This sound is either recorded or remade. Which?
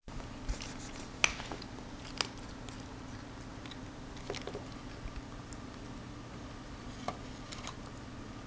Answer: recorded